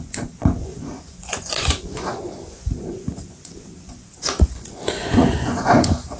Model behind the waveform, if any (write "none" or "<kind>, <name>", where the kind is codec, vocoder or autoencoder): vocoder, Vocos